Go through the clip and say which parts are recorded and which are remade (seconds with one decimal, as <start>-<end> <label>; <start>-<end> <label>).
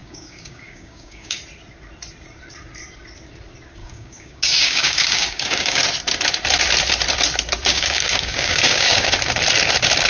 0.0-1.4 remade; 1.4-3.8 recorded; 3.8-5.8 remade; 5.8-7.7 recorded; 7.7-9.1 remade; 9.1-10.1 recorded